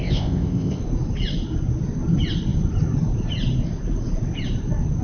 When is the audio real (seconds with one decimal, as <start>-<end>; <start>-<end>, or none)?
0.8-5.0